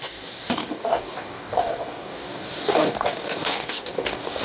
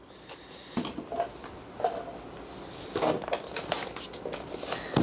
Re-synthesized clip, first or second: first